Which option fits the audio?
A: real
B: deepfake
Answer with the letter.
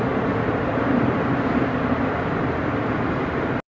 A